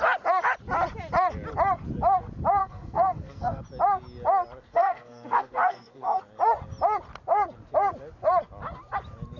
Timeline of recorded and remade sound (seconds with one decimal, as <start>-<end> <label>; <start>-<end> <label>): 0.0-2.6 recorded; 2.6-3.6 remade; 3.6-4.7 recorded; 4.7-6.2 remade; 6.2-9.4 recorded

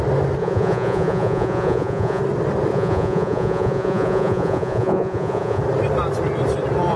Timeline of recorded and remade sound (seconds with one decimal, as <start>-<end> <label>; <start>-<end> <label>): 0.0-0.4 recorded; 0.4-2.2 remade; 2.2-2.7 recorded; 2.7-5.6 remade; 5.6-7.0 recorded

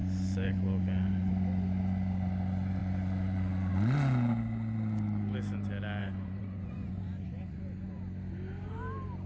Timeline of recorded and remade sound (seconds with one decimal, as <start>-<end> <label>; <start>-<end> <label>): 0.0-1.3 remade; 1.3-2.8 recorded; 2.8-3.7 remade; 3.7-6.0 recorded; 6.0-8.0 remade; 8.0-9.3 recorded

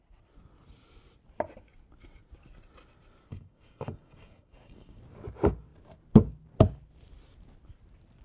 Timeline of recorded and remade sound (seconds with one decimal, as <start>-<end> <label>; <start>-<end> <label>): 0.0-3.3 recorded; 3.3-5.0 remade; 5.0-8.2 recorded

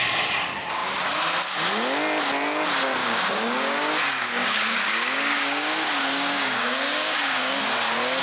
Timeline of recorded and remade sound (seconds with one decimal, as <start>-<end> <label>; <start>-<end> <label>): 0.0-3.0 recorded; 3.0-7.6 remade; 7.6-8.2 recorded

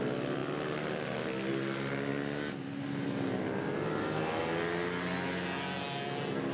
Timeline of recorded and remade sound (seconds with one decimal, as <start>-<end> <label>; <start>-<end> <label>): 0.0-6.5 recorded

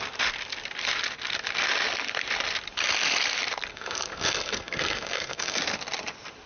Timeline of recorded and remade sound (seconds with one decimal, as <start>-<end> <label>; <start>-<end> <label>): 0.0-3.7 recorded; 3.7-5.6 remade; 5.6-6.5 recorded

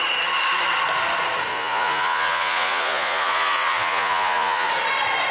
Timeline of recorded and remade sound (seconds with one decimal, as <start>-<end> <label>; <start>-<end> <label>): 0.0-1.5 recorded; 1.5-4.7 remade; 4.7-5.3 recorded